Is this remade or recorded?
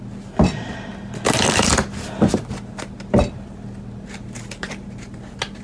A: recorded